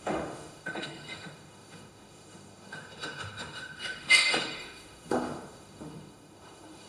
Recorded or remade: remade